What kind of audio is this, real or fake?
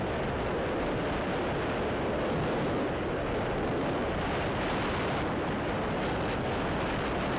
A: real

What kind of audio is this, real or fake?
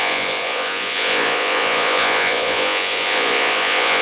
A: fake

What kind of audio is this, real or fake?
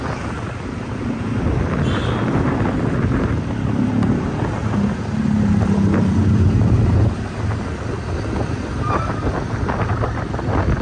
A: real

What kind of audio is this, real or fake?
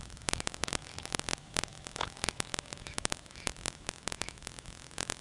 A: fake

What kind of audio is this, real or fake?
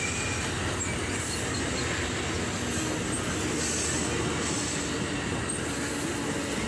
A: real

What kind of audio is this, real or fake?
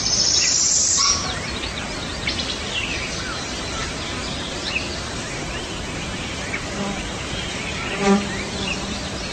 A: fake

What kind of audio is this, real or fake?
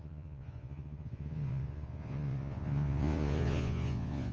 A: fake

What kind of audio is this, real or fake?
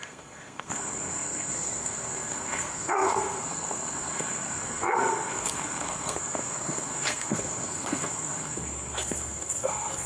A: fake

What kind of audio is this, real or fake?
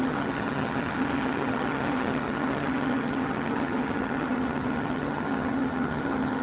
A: fake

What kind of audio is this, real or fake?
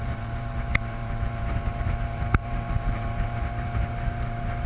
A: fake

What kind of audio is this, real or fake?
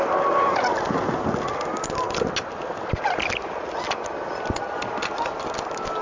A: real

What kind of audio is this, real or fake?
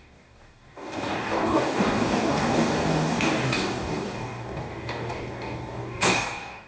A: fake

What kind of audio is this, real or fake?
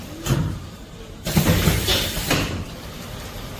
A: fake